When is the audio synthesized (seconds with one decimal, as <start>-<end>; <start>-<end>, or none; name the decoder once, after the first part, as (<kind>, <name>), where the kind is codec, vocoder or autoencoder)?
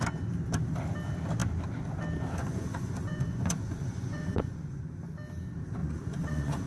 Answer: 2.4-4.8 (vocoder, Vocos); 5.8-6.7